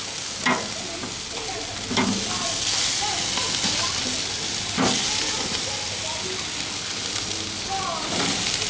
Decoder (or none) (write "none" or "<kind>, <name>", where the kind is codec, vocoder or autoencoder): none